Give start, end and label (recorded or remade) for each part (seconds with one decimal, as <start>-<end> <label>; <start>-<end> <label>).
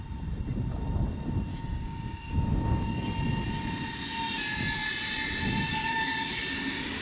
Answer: 0.0-1.5 recorded; 1.5-2.3 remade; 2.3-5.7 recorded; 5.7-7.0 remade